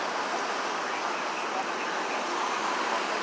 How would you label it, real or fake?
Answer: real